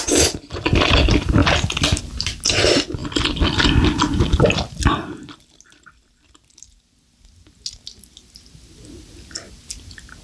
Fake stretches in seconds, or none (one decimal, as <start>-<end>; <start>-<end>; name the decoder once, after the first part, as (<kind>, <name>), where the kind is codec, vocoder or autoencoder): 1.4-2.0 (vocoder, BigVGAN v2)